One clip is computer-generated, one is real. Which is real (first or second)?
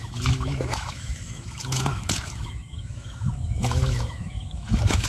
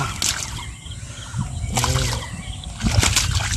second